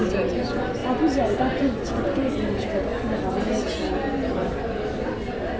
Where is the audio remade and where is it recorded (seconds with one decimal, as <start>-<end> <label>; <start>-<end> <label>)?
0.0-5.6 recorded